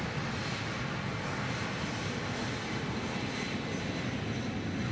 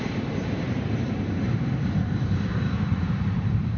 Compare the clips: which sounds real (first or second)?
first